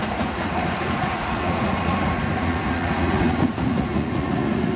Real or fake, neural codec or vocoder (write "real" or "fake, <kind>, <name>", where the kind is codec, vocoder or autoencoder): fake, vocoder, Vocos